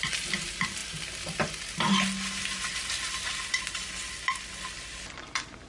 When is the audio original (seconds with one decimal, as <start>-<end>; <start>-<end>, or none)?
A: 0.0-5.7